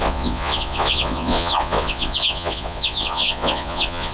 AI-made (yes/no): yes